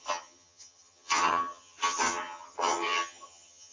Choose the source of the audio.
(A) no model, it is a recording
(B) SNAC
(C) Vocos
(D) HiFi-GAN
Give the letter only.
D